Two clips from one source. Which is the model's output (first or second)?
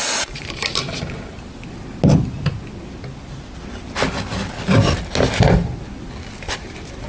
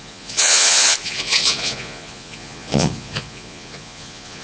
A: second